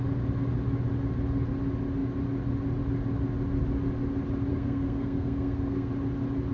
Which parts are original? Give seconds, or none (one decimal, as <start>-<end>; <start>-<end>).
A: 0.0-4.5; 5.9-6.5